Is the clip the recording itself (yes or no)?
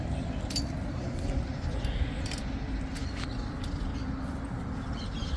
yes